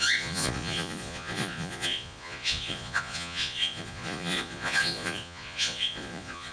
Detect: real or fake fake